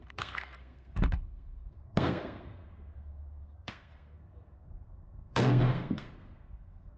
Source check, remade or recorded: remade